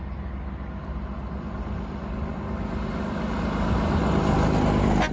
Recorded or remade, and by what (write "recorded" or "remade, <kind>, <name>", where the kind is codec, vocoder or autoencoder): recorded